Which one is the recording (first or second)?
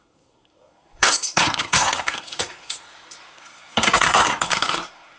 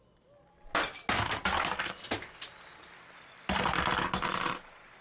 second